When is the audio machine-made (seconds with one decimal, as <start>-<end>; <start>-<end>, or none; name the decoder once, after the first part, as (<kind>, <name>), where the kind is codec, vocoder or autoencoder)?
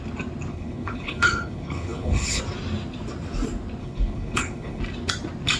0.5-2.4 (codec, HILCodec); 3.8-4.8